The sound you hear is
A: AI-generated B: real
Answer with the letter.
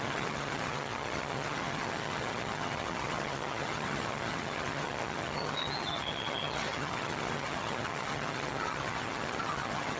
A